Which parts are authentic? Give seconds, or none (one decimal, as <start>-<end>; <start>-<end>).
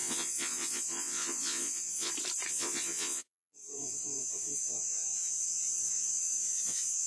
2.1-2.5